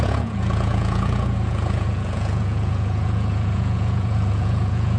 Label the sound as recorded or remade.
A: remade